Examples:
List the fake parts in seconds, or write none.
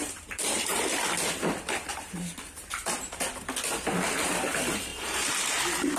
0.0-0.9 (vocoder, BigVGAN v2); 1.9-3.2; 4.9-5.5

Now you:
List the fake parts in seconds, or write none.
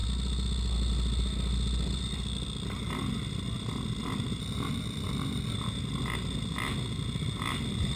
none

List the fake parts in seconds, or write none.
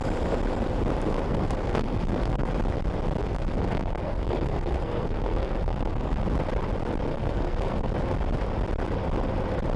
1.1-2.5 (codec, SNAC); 3.2-6.2; 7.1-7.9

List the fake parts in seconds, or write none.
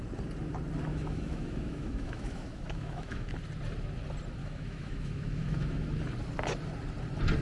0.9-3.3 (autoencoder, DAC-VAE); 4.4-6.0